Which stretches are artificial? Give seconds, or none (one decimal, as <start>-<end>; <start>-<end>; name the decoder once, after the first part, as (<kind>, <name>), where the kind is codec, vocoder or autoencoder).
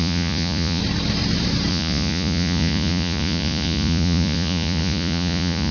0.0-0.8 (vocoder, Vocos); 1.7-5.7